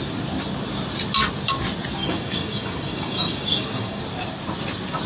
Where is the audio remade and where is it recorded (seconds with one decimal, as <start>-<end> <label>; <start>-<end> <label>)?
0.0-2.0 recorded; 2.0-4.0 remade; 4.0-5.1 recorded